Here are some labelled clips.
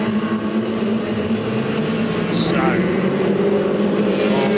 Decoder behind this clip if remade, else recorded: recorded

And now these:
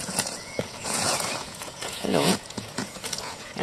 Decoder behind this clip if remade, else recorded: remade, vocoder, Vocos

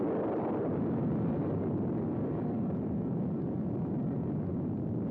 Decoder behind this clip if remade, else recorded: recorded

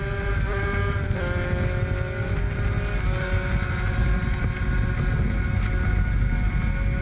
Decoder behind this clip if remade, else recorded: recorded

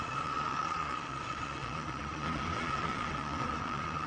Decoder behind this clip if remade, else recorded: remade, vocoder, Vocos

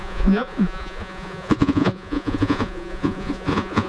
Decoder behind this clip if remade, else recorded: remade, vocoder, Vocos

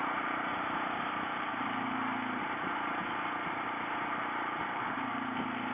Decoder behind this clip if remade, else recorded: recorded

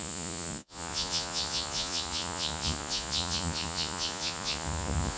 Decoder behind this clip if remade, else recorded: remade, vocoder, Vocos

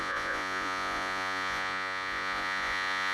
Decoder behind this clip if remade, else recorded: remade, vocoder, Vocos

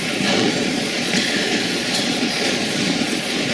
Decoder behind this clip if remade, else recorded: remade, vocoder, Vocos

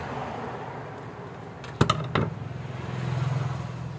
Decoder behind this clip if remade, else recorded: recorded